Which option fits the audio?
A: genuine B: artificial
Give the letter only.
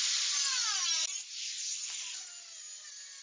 A